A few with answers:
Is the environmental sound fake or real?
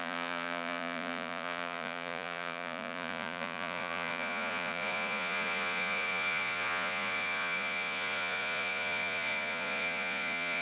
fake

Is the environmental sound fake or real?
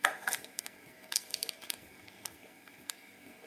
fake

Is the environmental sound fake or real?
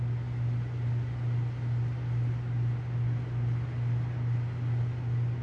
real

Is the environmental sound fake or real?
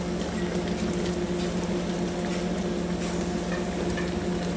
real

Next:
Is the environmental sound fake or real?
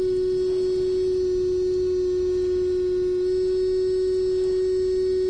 real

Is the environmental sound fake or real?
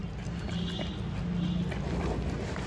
real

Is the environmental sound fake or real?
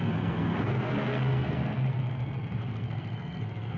fake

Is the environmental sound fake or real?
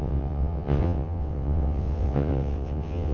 fake